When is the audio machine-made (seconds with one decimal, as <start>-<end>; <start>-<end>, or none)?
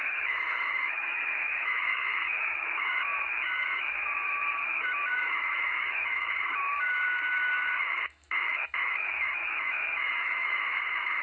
0.0-11.2